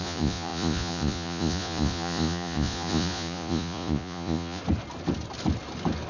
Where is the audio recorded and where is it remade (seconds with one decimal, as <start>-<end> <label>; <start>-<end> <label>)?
0.0-4.6 remade; 4.6-6.1 recorded